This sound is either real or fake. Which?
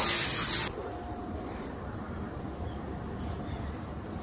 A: real